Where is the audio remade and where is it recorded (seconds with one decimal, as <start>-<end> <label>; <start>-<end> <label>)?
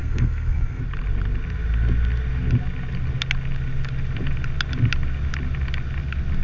0.0-0.8 remade; 0.8-6.4 recorded